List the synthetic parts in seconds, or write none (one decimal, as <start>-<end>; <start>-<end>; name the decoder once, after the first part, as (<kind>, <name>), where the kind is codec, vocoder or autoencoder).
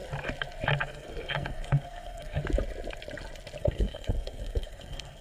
0.8-2.4 (codec, SNAC); 3.6-5.2